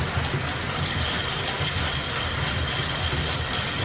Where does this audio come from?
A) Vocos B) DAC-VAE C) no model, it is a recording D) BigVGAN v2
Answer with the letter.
C